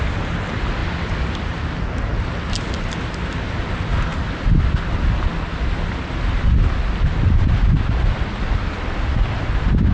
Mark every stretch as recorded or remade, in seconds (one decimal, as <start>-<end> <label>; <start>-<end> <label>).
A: 0.0-9.9 recorded